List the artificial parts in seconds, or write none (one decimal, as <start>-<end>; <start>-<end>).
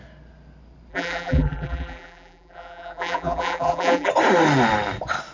0.9-4.1